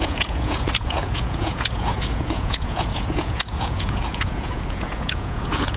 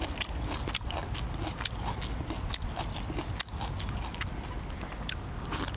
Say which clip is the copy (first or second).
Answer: first